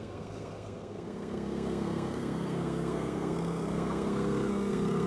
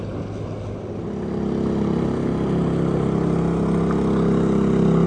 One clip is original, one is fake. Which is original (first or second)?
second